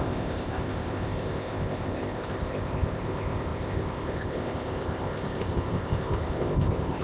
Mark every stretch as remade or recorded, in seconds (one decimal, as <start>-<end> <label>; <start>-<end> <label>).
0.0-7.0 remade